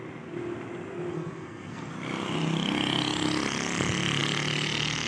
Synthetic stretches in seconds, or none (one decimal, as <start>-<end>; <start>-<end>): 1.1-1.9